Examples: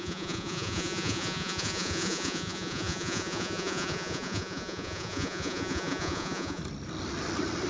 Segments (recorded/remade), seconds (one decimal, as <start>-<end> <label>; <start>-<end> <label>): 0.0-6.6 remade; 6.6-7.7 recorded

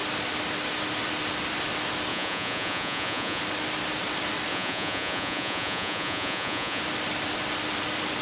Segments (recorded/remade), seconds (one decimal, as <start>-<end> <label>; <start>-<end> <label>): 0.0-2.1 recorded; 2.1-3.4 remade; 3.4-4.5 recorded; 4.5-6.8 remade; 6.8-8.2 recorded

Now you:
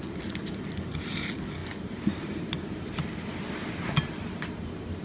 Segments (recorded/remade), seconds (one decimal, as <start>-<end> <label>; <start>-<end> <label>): 0.0-5.0 recorded

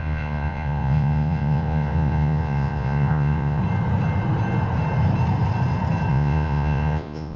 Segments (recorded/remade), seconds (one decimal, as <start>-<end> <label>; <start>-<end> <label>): 0.0-3.6 remade; 3.6-6.1 recorded; 6.1-7.4 remade